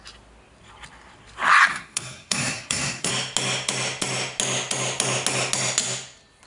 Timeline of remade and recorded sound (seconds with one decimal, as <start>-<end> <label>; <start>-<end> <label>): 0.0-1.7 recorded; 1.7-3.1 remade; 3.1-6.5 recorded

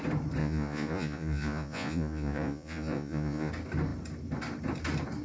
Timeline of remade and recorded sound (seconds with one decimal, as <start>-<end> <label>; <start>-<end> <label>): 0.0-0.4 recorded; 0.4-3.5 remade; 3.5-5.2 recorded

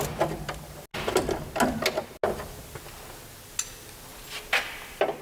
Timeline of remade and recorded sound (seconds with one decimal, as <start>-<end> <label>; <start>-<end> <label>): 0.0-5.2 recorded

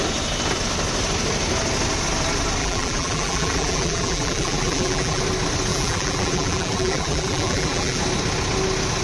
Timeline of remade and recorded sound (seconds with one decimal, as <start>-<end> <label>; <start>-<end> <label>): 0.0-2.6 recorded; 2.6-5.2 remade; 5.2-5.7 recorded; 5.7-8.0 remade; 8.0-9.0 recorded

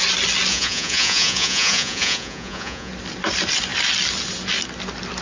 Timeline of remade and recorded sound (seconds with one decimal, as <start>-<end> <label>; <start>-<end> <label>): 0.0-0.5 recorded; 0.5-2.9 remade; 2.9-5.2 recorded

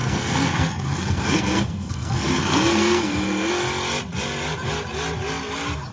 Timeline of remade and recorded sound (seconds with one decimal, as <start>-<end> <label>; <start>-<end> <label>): 0.0-3.5 remade; 3.5-5.9 recorded

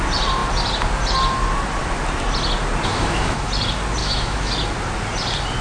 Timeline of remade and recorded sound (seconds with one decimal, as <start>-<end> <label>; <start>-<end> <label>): 0.0-2.9 recorded; 2.9-3.5 remade; 3.5-4.0 recorded; 4.0-4.5 remade; 4.5-5.6 recorded